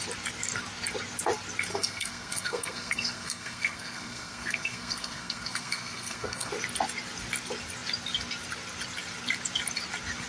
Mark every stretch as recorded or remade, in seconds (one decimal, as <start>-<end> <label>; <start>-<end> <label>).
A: 0.0-1.7 recorded; 1.7-6.5 remade; 6.5-10.3 recorded